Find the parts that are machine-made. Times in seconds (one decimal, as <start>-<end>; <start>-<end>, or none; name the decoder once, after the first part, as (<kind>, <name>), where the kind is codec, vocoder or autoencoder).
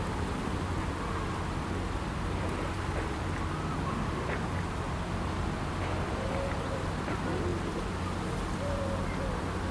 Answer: none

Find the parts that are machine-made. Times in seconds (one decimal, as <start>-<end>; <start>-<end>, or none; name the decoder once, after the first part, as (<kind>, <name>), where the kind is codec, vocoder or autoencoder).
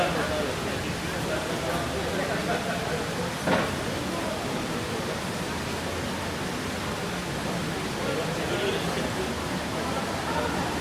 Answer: none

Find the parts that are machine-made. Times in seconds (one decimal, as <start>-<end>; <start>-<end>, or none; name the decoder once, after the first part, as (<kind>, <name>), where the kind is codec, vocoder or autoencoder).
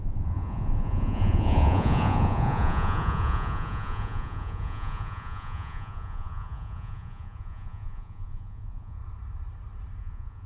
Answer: 0.0-9.0 (vocoder, Vocos); 10.0-10.5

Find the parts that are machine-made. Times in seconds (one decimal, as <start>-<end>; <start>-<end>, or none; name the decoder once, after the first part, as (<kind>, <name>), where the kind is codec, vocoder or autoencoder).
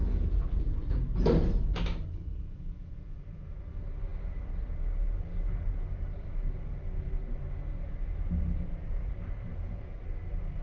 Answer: 2.3-3.6 (vocoder, Vocos); 9.5-10.0